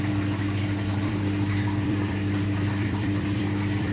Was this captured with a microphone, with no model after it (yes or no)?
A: no